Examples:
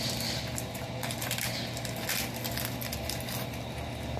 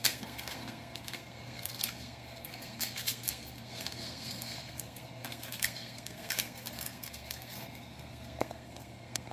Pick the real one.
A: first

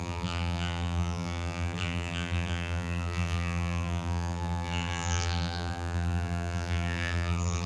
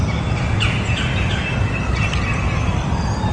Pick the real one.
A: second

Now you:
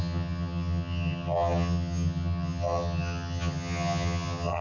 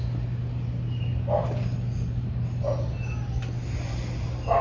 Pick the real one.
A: second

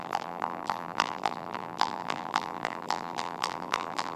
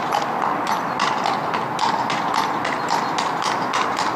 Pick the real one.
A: second